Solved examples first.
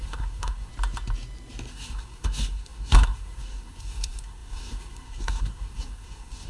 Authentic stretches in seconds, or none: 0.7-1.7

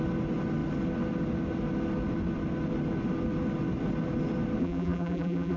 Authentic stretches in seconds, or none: 0.0-4.6

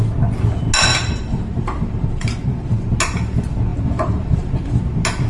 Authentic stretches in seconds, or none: 0.0-0.9; 2.9-3.7; 4.7-5.3

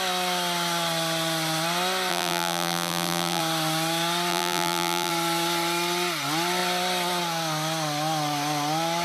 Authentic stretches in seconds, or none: 0.0-2.1; 3.4-4.3; 5.1-9.0

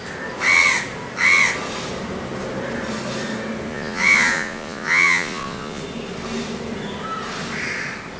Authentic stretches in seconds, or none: 0.0-3.7; 5.8-8.2